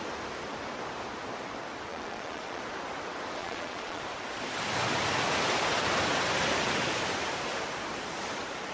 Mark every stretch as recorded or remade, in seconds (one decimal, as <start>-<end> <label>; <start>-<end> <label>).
0.0-1.9 recorded; 1.9-2.6 remade; 2.6-3.4 recorded; 3.4-4.0 remade; 4.0-8.7 recorded